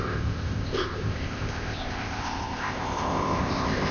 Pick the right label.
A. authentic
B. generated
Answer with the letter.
B